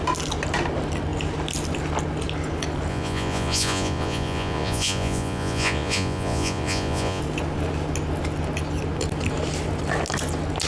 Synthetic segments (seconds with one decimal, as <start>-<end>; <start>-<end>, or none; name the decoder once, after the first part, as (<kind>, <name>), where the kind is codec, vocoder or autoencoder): 2.9-7.2 (vocoder, Vocos)